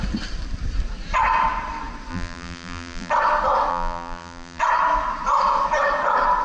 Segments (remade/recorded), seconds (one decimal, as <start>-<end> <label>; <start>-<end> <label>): 0.0-2.1 recorded; 2.1-3.1 remade; 3.1-3.7 recorded; 3.7-4.6 remade; 4.6-6.4 recorded